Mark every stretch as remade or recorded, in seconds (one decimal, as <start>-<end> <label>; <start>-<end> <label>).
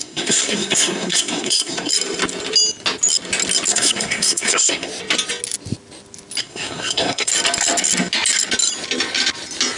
0.0-1.9 remade; 1.9-3.7 recorded; 3.7-4.9 remade; 4.9-6.4 recorded; 6.4-7.3 remade; 7.3-9.8 recorded